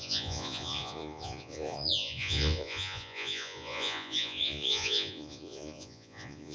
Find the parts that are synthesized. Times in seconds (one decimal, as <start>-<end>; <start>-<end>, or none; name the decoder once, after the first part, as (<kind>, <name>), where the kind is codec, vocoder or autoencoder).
0.0-6.5 (vocoder, Vocos)